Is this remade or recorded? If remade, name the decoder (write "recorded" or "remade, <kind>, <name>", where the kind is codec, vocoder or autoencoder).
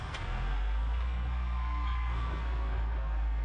remade, codec, SNAC